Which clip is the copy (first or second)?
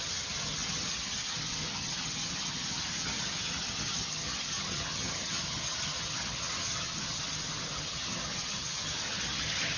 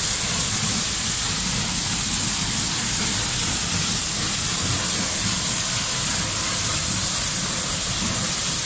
first